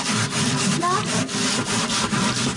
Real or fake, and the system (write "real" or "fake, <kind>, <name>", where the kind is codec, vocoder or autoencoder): real